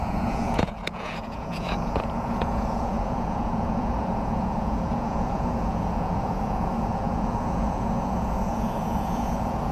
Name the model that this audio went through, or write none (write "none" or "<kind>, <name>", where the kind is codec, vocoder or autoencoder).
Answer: vocoder, Vocos